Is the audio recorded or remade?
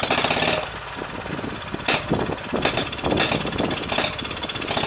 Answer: recorded